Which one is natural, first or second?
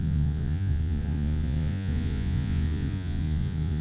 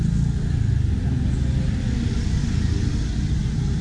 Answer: second